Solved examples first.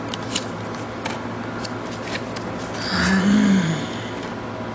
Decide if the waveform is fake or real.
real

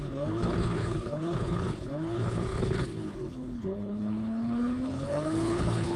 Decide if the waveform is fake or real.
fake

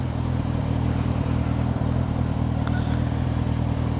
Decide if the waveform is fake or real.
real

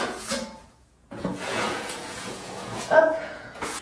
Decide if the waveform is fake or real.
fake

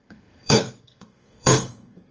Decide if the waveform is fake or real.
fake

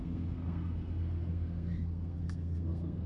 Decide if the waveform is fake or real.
fake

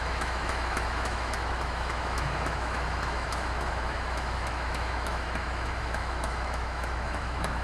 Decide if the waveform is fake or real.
fake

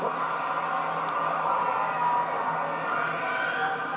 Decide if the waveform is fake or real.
real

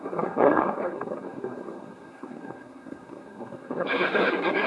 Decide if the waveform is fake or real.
fake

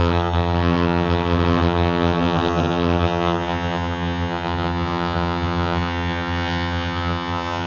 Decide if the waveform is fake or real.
fake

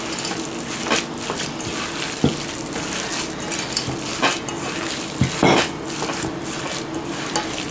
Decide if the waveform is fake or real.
real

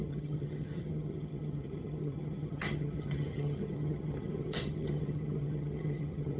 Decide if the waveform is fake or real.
fake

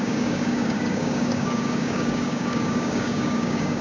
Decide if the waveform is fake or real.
fake